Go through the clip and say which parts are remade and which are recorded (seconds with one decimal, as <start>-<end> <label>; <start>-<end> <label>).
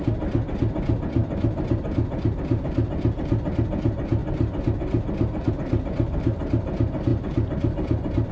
0.0-8.3 recorded